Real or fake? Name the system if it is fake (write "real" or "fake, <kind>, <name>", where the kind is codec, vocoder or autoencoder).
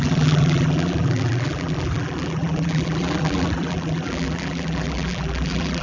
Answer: fake, vocoder, BigVGAN v2